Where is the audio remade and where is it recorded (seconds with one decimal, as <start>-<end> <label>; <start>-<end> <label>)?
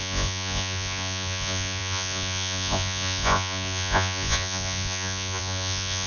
0.0-6.1 remade